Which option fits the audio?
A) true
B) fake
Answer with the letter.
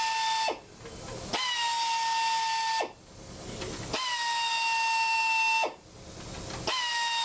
A